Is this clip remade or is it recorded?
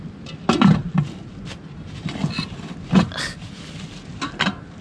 recorded